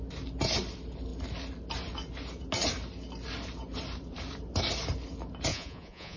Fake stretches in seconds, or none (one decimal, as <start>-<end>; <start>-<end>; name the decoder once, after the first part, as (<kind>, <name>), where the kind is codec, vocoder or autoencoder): 5.5-6.2 (vocoder, Vocos)